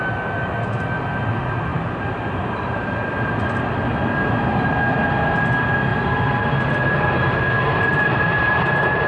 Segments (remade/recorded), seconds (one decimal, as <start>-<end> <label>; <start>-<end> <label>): 0.0-1.7 recorded; 1.7-3.0 remade; 3.0-5.9 recorded; 5.9-6.7 remade; 6.7-9.1 recorded